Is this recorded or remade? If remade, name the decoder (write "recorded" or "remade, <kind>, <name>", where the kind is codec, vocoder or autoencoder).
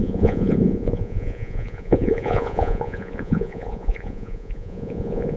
remade, vocoder, Vocos